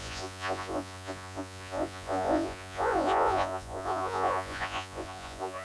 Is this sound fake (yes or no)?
yes